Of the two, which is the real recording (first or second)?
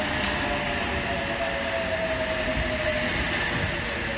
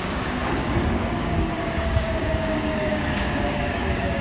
first